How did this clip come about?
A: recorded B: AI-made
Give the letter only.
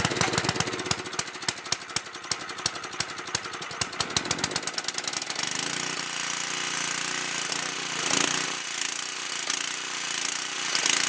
A